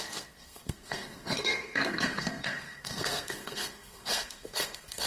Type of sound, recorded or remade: remade